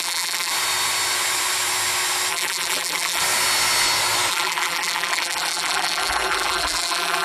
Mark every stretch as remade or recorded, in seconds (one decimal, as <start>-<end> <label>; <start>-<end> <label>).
0.0-0.5 remade; 0.5-2.3 recorded; 2.3-3.2 remade; 3.2-4.3 recorded; 4.3-7.2 remade